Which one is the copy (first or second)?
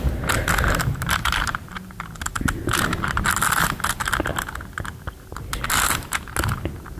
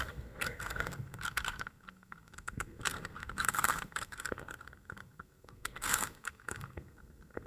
second